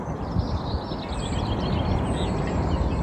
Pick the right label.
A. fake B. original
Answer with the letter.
B